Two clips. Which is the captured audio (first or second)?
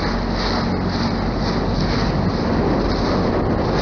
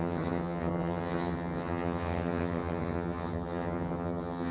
first